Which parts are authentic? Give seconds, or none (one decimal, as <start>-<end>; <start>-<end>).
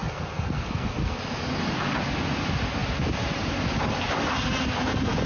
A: 1.2-5.3